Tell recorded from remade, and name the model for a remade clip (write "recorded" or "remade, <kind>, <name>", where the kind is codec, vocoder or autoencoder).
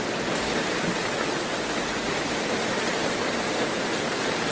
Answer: recorded